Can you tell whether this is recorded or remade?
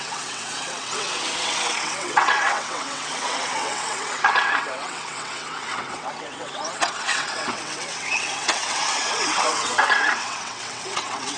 remade